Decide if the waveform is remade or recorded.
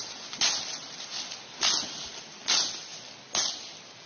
recorded